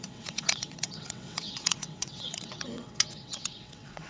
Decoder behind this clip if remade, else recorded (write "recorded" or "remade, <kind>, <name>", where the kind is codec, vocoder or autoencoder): remade, vocoder, WaveNeXt